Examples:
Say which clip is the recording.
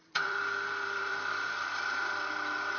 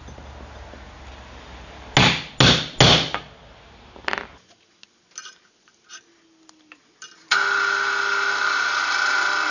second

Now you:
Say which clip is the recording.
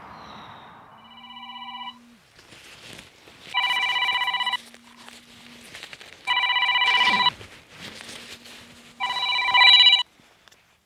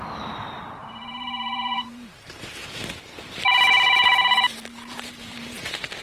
first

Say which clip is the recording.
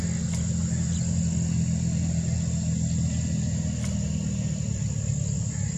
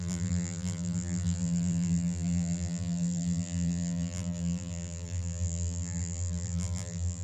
first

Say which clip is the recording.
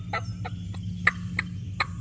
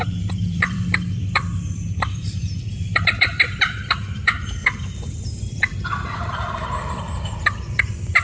first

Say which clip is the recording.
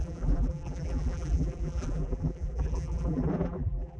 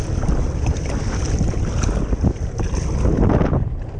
second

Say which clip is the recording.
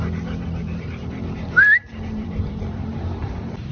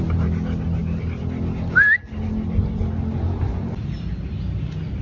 second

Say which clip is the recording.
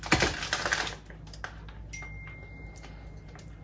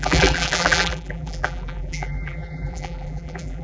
first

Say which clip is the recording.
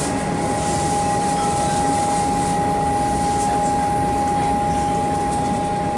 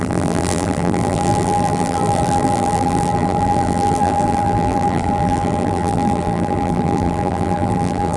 first